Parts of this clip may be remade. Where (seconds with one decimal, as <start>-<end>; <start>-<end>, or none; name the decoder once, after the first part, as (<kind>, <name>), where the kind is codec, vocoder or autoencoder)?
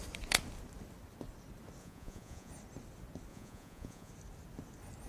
1.8-2.5 (vocoder, Vocos); 3.3-4.1